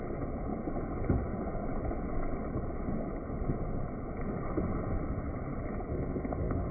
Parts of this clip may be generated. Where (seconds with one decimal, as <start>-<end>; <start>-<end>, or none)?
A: 5.9-6.7

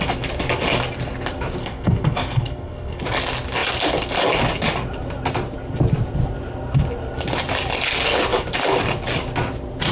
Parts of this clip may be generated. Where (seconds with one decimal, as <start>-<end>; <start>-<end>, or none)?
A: 1.6-3.0

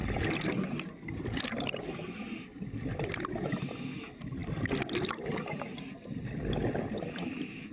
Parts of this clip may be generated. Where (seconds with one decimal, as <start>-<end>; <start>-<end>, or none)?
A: none